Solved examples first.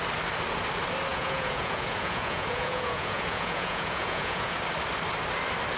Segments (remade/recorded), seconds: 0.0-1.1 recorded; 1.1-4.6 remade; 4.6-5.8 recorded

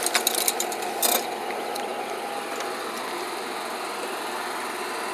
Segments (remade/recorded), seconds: 0.0-5.1 recorded

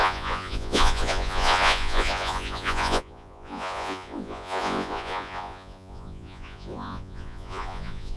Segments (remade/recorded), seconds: 0.0-8.2 remade

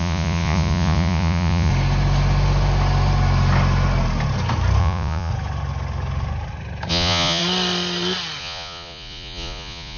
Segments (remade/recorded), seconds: 0.0-1.7 remade; 1.7-4.8 recorded; 4.8-5.3 remade; 5.3-6.9 recorded; 6.9-7.4 remade; 7.4-8.4 recorded; 8.4-10.0 remade

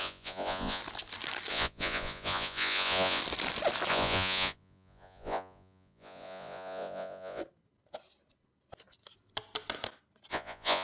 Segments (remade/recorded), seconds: 0.0-0.8 remade; 0.8-1.5 recorded; 1.5-3.2 remade; 3.2-3.9 recorded; 3.9-7.4 remade; 7.4-10.3 recorded; 10.3-10.8 remade

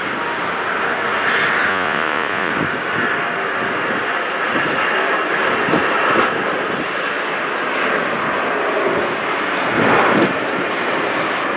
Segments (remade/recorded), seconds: 0.0-1.7 recorded; 1.7-2.5 remade; 2.5-11.6 recorded